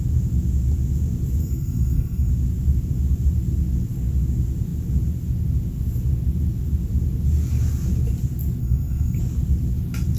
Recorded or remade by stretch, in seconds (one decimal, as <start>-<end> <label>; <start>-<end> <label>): 0.0-1.4 recorded; 1.4-2.3 remade; 2.3-8.6 recorded; 8.6-9.2 remade; 9.2-10.2 recorded

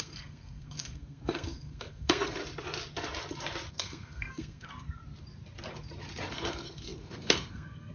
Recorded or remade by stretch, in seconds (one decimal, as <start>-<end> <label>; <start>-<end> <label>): 0.0-2.4 remade; 2.4-3.7 recorded; 3.7-5.0 remade; 5.0-6.3 recorded; 6.3-7.9 remade